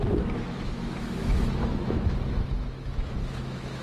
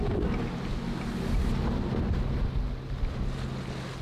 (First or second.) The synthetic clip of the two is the first